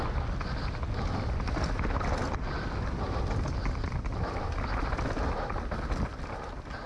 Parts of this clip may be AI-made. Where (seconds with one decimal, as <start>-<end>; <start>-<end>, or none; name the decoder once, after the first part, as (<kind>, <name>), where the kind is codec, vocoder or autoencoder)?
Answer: none